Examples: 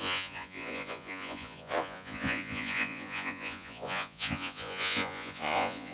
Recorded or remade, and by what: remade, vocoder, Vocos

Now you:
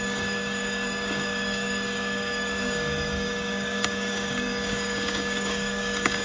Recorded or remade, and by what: remade, codec, DAC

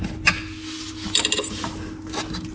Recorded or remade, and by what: recorded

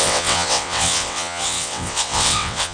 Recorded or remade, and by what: remade, vocoder, WaveNeXt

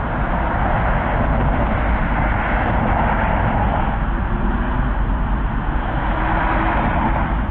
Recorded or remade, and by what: recorded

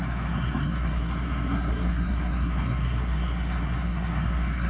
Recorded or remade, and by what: remade, codec, SNAC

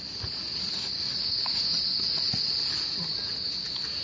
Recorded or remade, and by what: recorded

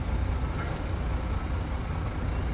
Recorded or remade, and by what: recorded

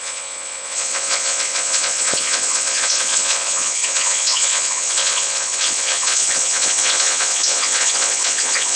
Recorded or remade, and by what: remade, vocoder, Vocos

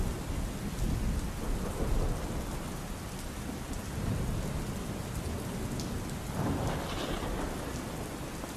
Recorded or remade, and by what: recorded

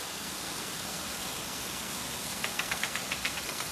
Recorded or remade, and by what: remade, codec, SNAC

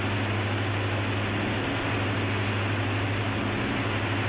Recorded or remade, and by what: recorded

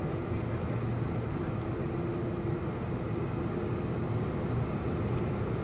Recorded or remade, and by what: recorded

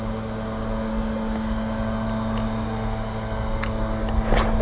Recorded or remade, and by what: recorded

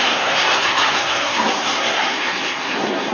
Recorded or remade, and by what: remade, codec, SNAC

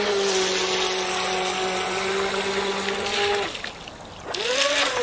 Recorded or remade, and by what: recorded